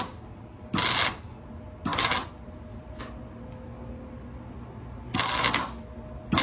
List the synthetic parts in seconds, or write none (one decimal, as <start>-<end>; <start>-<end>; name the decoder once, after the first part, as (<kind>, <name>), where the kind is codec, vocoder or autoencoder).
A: none